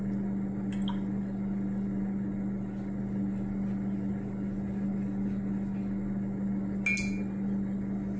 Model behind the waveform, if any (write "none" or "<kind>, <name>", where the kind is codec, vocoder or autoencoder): none